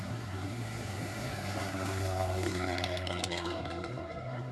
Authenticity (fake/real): fake